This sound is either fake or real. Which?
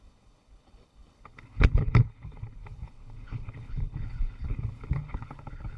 fake